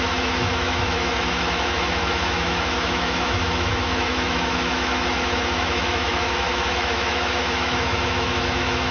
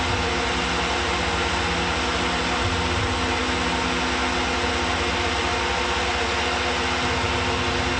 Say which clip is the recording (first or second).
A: second